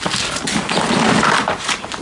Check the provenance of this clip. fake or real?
real